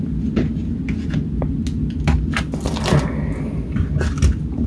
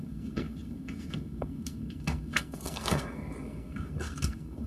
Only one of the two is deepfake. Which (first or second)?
second